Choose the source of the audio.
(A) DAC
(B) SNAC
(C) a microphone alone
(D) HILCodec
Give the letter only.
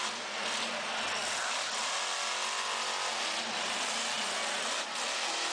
C